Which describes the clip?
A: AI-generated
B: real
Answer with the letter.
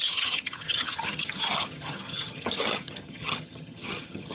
A